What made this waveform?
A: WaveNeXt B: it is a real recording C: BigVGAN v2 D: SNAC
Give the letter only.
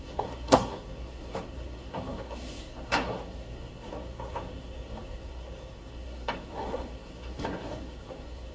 D